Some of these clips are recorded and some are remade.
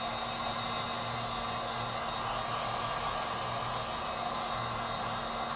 recorded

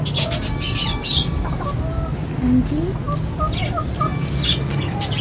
recorded